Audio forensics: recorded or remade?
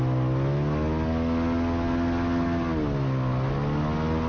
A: recorded